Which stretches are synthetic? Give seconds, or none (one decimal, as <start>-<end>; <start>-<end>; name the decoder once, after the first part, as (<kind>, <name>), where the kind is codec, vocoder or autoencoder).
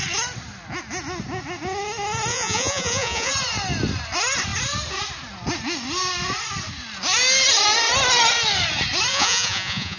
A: 2.3-3.3 (vocoder, Vocos); 9.1-10.0